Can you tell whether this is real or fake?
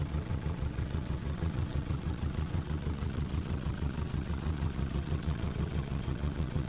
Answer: fake